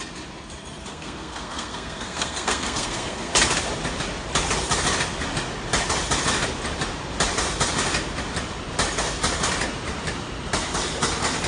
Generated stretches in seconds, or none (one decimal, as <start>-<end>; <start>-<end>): 0.9-3.3